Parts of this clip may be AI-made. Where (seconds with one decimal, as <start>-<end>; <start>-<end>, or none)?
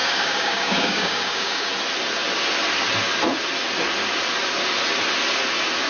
0.0-1.7